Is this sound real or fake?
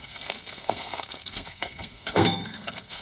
fake